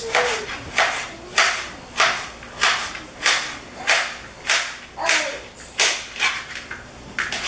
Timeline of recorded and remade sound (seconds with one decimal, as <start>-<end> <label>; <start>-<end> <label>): 0.0-7.5 recorded